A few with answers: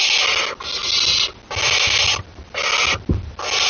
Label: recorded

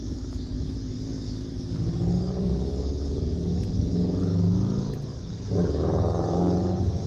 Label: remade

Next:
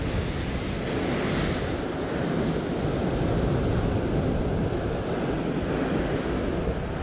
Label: recorded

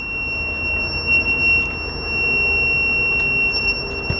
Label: recorded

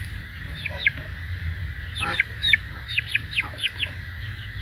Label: remade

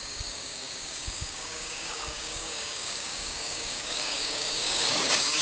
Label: remade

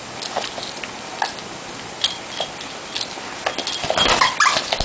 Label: recorded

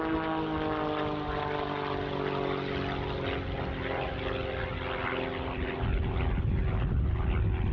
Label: recorded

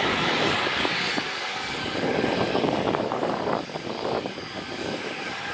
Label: remade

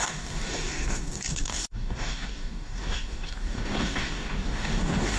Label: remade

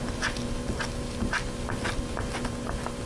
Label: recorded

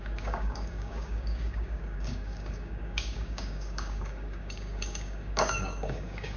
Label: remade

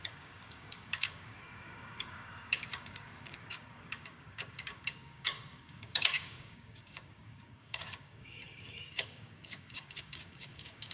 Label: remade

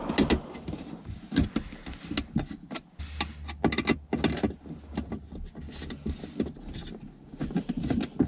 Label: recorded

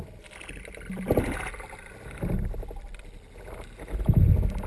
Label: recorded